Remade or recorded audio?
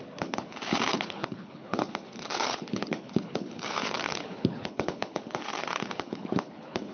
remade